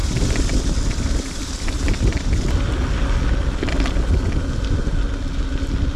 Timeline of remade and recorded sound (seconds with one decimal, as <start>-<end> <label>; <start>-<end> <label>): 0.0-6.0 recorded

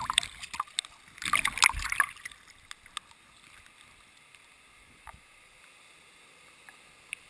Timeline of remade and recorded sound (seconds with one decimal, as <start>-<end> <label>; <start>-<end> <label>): 0.0-4.8 recorded; 4.8-5.6 remade; 5.6-7.3 recorded

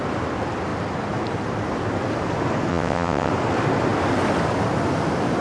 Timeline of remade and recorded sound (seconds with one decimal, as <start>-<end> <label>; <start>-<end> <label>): 0.0-2.7 recorded; 2.7-3.3 remade; 3.3-5.4 recorded

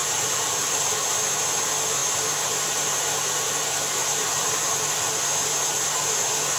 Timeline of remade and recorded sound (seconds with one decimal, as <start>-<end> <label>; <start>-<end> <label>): 0.0-1.2 remade; 1.2-4.0 recorded; 4.0-4.7 remade; 4.7-6.6 recorded

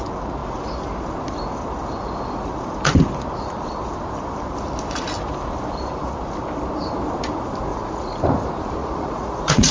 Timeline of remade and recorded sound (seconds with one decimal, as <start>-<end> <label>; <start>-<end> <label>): 0.0-7.7 recorded; 7.7-8.2 remade; 8.2-8.8 recorded; 8.8-9.7 remade

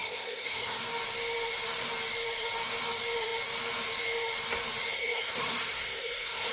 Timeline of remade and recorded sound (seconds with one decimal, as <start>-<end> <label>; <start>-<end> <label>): 0.0-0.8 remade; 0.8-4.9 recorded; 4.9-6.5 remade